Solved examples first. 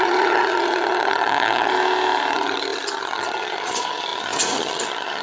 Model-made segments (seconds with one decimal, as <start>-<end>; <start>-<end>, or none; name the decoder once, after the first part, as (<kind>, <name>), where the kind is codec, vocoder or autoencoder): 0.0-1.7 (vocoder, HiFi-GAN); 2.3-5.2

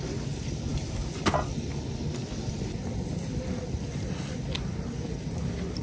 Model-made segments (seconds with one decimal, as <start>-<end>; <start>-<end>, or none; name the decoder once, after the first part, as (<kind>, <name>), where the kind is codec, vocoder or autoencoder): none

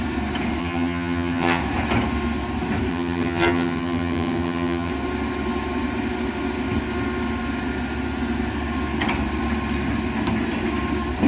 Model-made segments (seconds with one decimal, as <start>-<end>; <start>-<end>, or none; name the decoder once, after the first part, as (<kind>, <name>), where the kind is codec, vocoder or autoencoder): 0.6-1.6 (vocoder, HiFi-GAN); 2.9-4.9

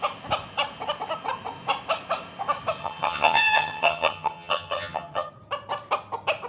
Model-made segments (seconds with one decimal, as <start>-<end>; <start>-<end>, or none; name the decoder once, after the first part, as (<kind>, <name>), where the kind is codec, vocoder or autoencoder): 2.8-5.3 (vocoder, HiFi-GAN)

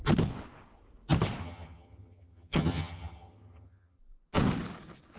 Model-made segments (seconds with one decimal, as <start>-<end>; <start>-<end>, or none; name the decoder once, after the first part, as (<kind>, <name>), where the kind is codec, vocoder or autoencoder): 1.4-4.0 (vocoder, HiFi-GAN)